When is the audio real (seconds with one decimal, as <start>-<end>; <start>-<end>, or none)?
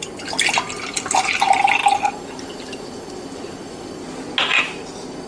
0.0-5.3